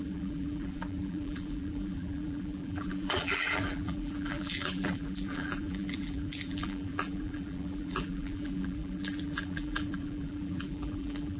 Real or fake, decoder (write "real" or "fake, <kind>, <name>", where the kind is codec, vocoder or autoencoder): fake, vocoder, BigVGAN v2